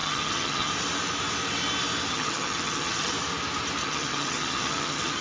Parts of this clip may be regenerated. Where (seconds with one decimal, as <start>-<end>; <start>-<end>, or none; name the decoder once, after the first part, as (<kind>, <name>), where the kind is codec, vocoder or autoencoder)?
0.0-0.7 (vocoder, HiFi-GAN); 2.1-3.1; 3.8-5.2